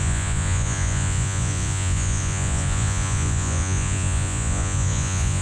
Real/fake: fake